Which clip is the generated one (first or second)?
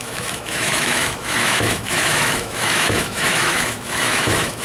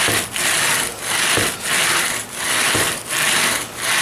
first